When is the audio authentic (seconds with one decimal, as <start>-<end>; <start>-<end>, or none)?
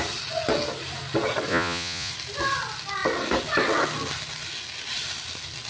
0.0-1.5; 2.1-5.7